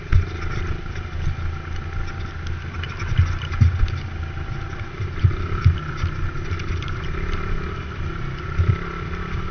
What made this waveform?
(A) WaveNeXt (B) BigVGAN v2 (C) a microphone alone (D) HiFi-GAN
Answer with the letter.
C